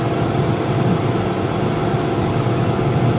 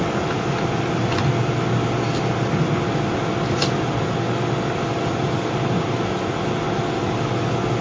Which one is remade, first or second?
first